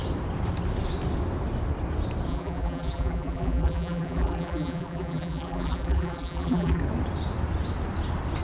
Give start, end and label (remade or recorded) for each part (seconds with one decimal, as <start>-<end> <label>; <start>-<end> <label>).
0.0-2.3 recorded; 2.3-6.8 remade; 6.8-8.4 recorded